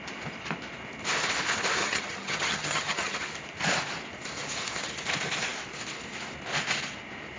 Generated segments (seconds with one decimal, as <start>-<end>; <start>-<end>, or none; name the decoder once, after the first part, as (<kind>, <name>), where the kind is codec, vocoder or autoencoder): 1.8-3.2 (vocoder, HiFi-GAN)